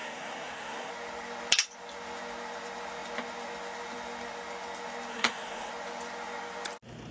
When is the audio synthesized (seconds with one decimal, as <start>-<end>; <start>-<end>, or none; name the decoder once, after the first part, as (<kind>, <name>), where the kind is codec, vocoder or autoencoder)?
0.0-0.9 (codec, SNAC); 5.1-5.7